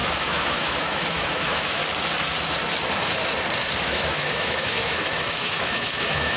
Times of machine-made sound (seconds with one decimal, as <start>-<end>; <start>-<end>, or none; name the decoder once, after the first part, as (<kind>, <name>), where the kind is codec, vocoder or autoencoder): 0.0-1.8 (autoencoder, DAC-VAE); 3.8-6.4